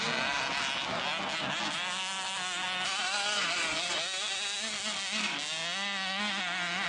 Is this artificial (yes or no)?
no